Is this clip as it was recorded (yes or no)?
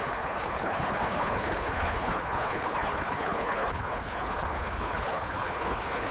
no